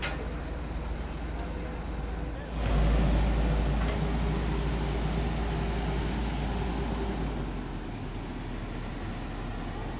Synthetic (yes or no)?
no